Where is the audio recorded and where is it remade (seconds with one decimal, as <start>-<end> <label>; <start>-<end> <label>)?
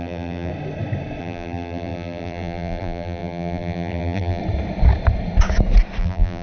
0.0-0.5 remade; 0.5-1.2 recorded; 1.2-4.4 remade; 4.4-6.0 recorded; 6.0-6.4 remade